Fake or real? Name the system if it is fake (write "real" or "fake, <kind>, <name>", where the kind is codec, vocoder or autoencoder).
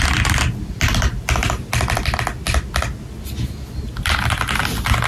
real